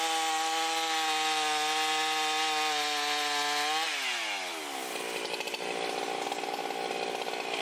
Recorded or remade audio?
recorded